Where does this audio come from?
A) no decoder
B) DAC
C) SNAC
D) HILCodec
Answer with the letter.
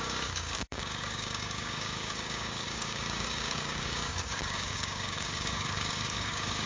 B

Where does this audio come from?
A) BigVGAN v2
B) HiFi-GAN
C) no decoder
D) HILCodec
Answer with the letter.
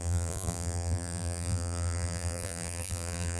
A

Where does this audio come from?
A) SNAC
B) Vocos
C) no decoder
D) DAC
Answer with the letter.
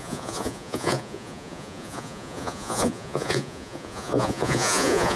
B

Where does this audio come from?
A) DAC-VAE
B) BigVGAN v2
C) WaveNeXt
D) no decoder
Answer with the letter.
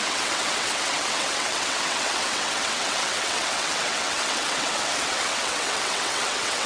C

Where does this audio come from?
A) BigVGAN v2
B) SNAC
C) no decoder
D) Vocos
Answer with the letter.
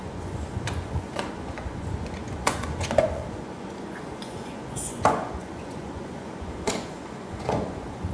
D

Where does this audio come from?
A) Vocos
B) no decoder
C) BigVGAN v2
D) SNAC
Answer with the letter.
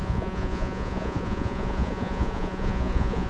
A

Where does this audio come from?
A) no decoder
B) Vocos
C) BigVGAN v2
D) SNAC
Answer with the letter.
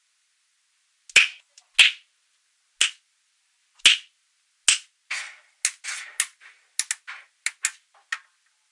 A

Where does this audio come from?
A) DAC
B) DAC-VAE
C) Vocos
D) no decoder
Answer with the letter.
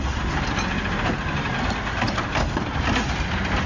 D